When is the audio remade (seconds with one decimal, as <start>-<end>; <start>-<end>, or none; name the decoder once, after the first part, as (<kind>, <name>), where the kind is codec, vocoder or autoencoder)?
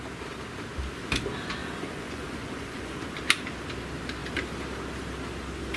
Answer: 1.6-3.0 (vocoder, Vocos)